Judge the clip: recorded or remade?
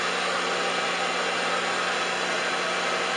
recorded